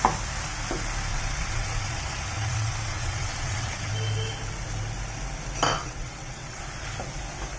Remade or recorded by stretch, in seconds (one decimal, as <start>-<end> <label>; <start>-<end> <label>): 0.0-1.1 recorded; 1.1-3.9 remade; 3.9-5.7 recorded; 5.7-6.6 remade; 6.6-7.6 recorded